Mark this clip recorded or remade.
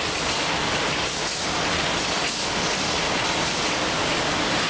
recorded